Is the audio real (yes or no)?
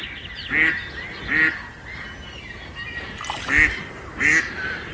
yes